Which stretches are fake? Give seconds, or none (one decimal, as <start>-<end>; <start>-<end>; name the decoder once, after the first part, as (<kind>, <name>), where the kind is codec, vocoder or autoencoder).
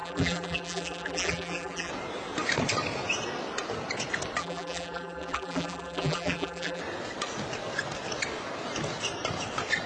0.0-1.9 (vocoder, BigVGAN v2); 4.4-6.8